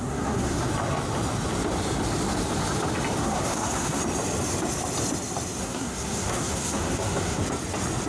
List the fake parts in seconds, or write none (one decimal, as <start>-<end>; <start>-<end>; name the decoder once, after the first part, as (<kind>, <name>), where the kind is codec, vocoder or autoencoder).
0.0-0.7 (codec, SNAC); 3.2-4.0; 5.6-7.4